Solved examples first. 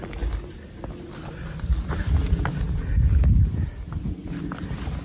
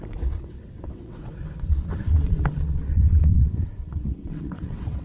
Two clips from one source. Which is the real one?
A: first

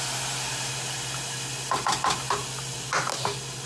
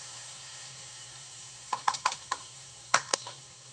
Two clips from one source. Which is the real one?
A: first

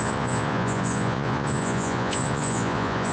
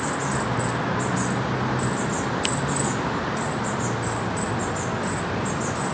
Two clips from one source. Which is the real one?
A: second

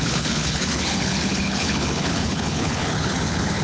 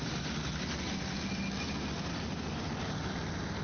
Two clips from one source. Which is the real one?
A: second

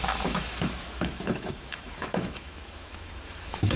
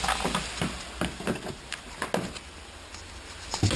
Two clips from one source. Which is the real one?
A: second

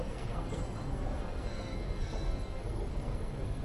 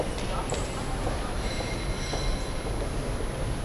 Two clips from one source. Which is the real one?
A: second